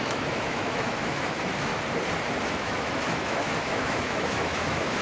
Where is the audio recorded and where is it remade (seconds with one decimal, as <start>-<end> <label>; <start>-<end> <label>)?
0.0-1.7 remade; 1.7-2.5 recorded; 2.5-5.0 remade